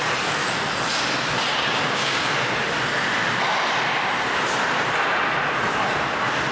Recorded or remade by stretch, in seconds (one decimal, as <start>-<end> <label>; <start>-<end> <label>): 0.0-1.5 recorded; 1.5-2.5 remade; 2.5-6.5 recorded